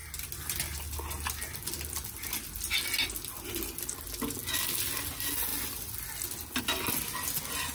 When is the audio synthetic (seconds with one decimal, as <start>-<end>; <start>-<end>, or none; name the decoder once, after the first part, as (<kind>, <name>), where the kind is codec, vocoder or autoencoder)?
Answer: none